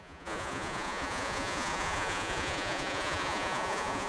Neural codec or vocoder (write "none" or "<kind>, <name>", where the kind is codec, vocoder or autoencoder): vocoder, Vocos